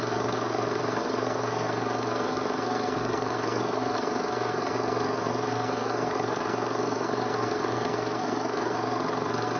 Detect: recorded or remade remade